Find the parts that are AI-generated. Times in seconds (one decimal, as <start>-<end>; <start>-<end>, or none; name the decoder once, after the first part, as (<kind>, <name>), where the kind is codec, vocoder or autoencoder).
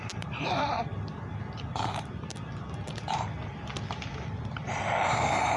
0.0-0.9 (vocoder, BigVGAN v2); 4.3-5.6